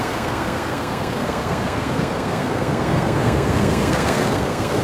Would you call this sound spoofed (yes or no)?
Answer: yes